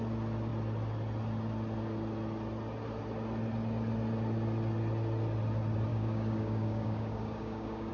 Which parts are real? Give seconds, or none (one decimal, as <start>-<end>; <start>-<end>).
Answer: 0.0-5.9